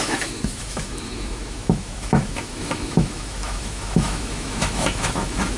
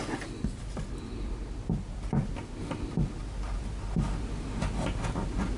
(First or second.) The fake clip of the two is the first